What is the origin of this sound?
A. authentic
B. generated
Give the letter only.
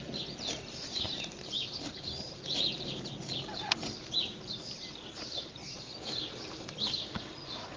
B